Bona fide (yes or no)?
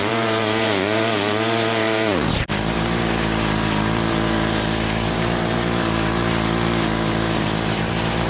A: no